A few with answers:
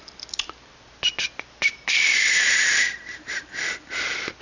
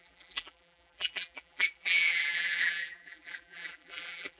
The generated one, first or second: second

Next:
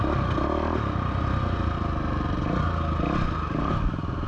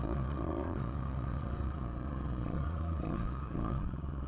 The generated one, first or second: second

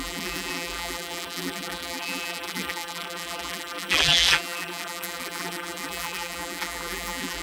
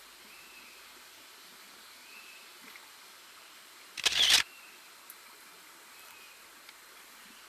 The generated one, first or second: first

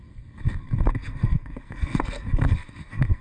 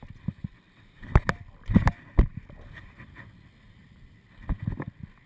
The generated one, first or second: first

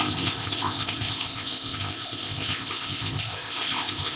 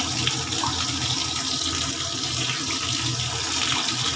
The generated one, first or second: first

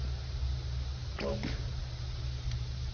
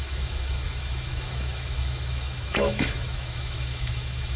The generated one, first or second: second